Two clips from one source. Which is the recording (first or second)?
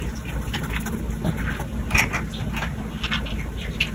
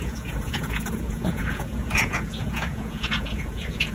first